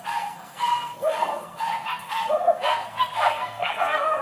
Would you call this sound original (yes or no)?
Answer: no